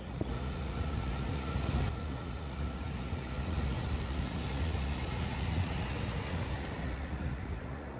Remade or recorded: remade